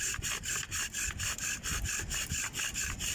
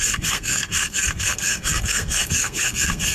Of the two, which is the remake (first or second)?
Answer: second